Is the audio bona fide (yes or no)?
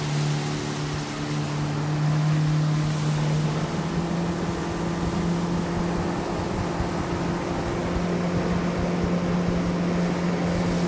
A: yes